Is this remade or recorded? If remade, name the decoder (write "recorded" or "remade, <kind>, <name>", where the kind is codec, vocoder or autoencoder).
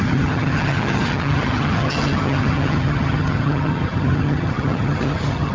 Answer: remade, vocoder, HiFi-GAN